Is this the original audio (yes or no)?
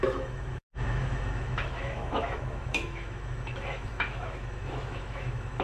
no